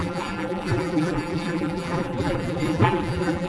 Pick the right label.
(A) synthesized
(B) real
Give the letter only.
A